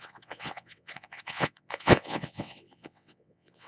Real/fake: fake